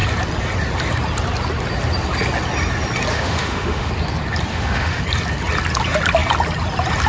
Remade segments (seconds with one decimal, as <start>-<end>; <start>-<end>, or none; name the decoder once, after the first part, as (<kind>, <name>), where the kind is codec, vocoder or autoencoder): 3.1-3.9 (autoencoder, DAC-VAE); 4.5-5.0